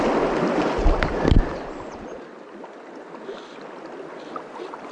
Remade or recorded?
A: recorded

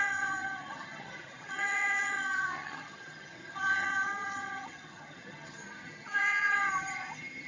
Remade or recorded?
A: remade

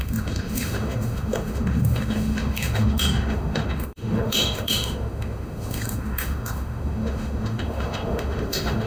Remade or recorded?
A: remade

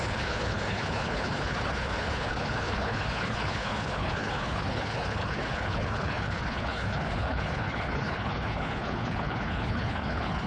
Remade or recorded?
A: remade